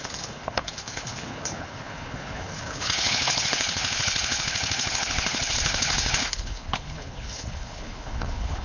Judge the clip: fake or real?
fake